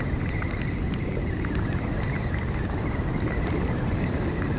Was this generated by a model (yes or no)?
no